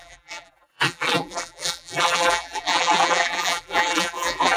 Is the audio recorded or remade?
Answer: remade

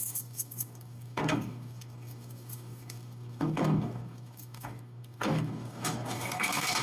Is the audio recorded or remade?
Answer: remade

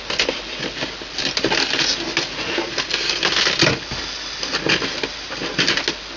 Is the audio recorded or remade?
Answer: recorded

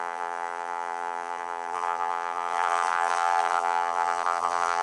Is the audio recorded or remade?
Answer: remade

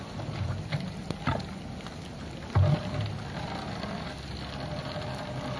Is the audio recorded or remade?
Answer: recorded